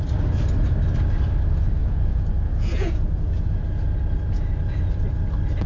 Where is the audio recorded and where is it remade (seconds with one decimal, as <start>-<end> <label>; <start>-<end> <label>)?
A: 0.0-1.8 recorded; 1.8-3.6 remade; 3.6-5.7 recorded